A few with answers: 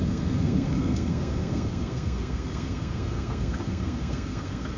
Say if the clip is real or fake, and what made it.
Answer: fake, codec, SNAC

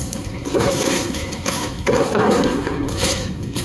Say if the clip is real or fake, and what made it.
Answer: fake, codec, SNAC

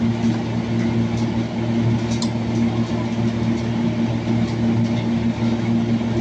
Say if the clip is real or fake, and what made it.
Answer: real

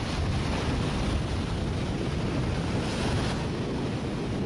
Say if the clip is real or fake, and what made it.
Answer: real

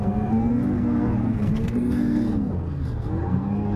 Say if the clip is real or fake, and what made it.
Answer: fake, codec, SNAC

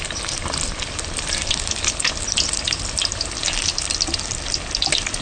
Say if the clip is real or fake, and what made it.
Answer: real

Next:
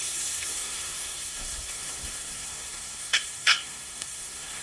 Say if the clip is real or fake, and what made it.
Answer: fake, codec, SNAC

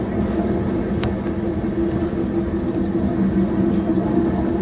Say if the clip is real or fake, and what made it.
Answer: real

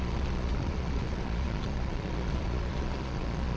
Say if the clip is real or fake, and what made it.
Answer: fake, vocoder, Vocos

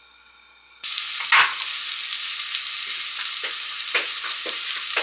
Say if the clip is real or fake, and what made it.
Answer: real